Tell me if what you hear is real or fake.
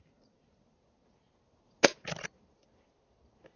real